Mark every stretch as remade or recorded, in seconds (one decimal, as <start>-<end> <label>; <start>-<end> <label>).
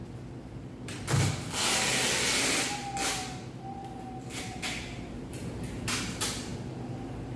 0.0-4.4 recorded; 4.4-6.5 remade; 6.5-7.4 recorded